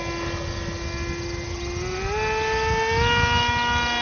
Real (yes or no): yes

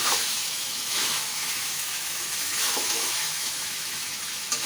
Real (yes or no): no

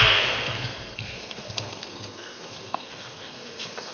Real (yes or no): no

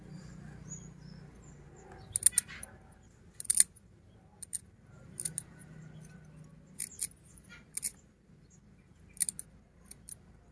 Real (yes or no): yes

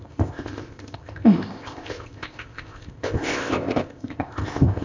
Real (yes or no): no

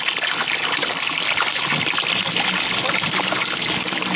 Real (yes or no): yes